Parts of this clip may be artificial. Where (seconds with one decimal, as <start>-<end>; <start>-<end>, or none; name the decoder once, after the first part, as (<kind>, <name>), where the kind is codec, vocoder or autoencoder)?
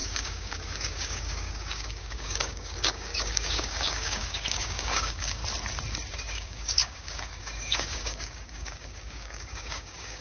0.0-5.4 (codec, DAC); 6.1-10.2